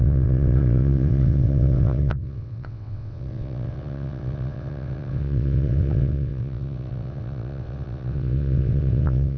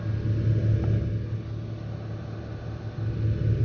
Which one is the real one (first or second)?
second